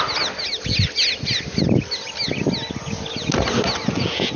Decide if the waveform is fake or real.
real